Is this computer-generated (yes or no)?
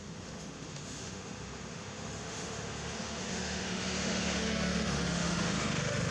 yes